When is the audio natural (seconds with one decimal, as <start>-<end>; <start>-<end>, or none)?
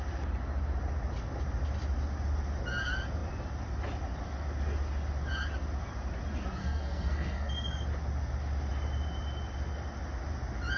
0.0-6.6; 7.5-10.8